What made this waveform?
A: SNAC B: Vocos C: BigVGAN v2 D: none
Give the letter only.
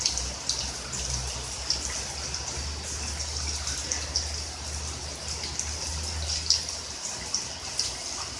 D